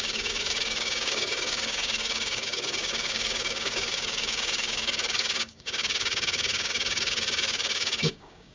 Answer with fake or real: fake